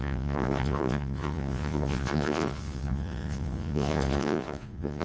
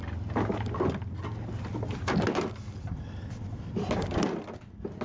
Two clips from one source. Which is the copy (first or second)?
first